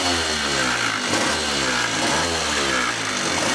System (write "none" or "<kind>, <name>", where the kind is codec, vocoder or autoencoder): none